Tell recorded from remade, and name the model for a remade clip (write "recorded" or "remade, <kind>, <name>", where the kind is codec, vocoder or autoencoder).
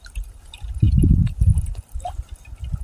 recorded